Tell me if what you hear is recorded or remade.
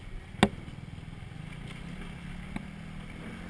recorded